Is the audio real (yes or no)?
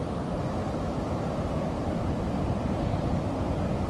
yes